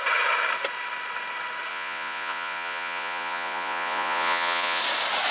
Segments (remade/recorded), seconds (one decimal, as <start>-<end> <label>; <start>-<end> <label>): 0.0-1.7 recorded; 1.7-4.8 remade; 4.8-5.3 recorded